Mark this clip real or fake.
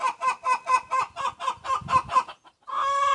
real